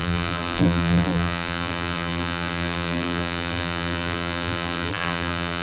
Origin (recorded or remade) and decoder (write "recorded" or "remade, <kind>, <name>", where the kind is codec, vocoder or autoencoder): remade, vocoder, BigVGAN v2